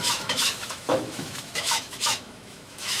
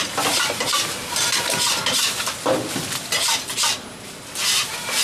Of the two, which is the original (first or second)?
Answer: second